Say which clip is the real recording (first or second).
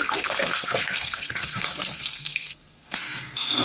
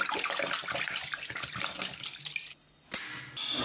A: second